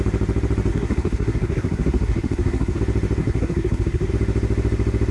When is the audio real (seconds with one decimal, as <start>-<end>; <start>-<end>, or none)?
0.0-0.7; 2.8-3.2; 4.1-5.1